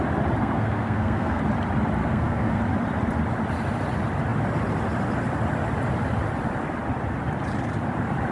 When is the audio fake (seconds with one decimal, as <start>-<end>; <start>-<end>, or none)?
0.4-1.4; 2.0-2.6